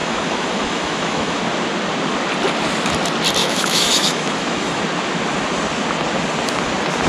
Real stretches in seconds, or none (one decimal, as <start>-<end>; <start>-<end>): 1.4-3.4; 4.8-7.1